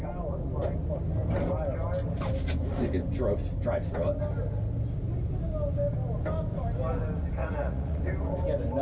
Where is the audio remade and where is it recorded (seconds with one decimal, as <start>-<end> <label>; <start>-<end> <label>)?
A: 0.0-7.4 recorded; 7.4-8.0 remade; 8.0-8.8 recorded